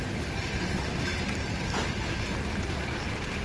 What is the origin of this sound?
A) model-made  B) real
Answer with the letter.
B